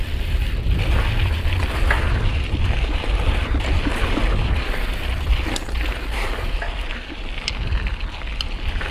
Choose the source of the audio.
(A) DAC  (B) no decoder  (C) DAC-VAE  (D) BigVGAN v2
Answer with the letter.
B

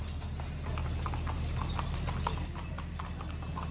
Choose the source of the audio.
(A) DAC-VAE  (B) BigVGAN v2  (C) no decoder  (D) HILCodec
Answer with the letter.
C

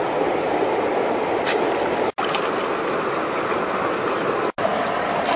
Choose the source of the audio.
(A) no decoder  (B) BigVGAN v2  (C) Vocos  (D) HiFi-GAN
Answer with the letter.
A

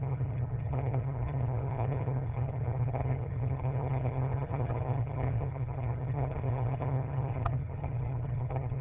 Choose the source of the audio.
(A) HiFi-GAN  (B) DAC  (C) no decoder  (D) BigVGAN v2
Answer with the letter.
A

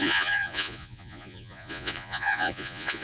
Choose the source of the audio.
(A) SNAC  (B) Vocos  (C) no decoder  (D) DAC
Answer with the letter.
B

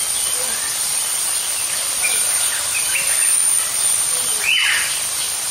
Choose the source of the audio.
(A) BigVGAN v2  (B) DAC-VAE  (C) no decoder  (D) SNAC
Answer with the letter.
A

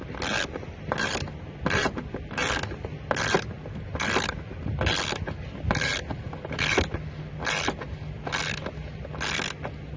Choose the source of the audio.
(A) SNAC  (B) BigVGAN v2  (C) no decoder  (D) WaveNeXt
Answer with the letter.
C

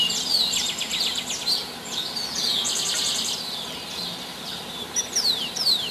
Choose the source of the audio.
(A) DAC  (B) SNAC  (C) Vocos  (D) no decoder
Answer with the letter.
D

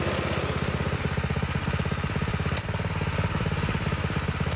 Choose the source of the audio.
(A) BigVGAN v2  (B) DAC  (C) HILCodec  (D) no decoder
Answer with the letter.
D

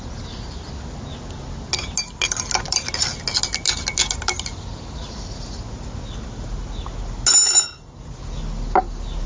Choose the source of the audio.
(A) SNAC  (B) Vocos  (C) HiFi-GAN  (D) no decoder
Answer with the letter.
D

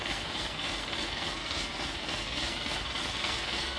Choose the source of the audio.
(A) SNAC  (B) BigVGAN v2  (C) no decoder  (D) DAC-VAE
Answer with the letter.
A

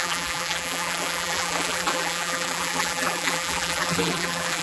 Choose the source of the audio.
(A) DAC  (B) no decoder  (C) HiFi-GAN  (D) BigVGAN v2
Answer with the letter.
D